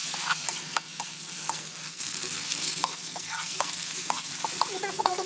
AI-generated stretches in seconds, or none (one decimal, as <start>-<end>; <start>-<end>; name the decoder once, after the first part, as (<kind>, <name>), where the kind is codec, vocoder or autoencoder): 0.0-4.3 (codec, SNAC); 4.8-5.3